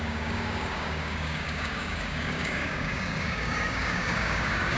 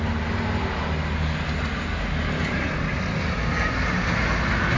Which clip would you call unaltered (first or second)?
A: second